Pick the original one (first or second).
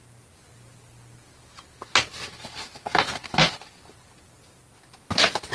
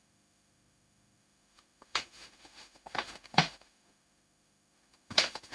first